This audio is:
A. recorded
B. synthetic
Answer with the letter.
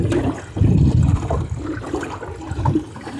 A